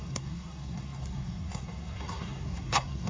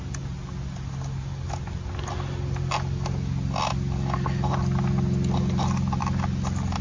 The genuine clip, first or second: second